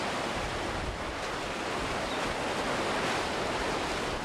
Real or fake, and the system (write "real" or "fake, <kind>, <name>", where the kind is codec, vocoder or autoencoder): real